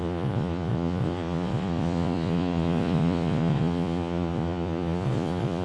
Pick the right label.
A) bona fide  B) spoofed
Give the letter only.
B